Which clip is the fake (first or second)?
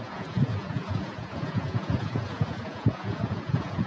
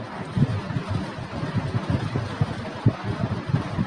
first